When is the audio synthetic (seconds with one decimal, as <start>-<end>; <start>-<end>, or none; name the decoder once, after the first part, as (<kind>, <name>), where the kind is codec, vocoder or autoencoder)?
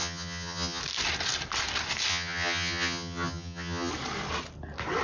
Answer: 0.0-0.8 (vocoder, HiFi-GAN); 2.1-3.9